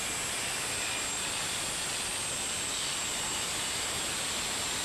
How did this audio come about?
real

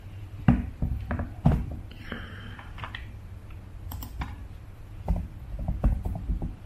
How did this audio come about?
fake